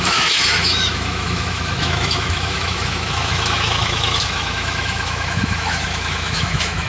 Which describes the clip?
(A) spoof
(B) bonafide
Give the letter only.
A